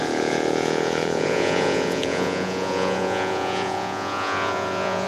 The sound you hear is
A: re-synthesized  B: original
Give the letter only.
A